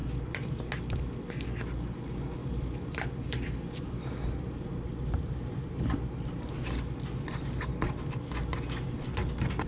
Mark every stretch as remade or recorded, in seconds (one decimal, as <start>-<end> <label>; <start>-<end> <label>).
0.0-2.4 recorded; 2.4-5.8 remade; 5.8-9.7 recorded